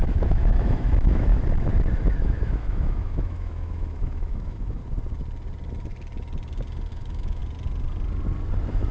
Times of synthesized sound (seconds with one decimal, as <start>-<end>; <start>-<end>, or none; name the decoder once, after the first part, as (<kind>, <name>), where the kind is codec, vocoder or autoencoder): 0.0-1.3 (autoencoder, DAC-VAE); 2.2-4.8; 6.9-7.4